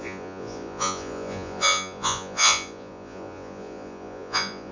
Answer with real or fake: fake